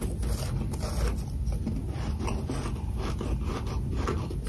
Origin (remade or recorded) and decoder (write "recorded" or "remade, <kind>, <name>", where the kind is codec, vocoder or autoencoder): recorded